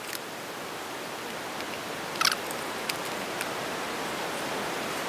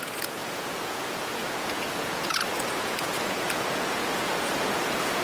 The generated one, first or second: second